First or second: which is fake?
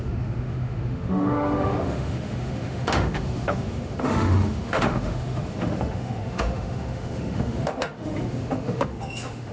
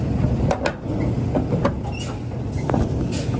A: first